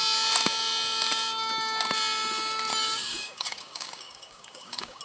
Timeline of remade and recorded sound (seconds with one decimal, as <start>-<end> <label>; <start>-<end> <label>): 0.0-2.7 recorded; 2.7-5.0 remade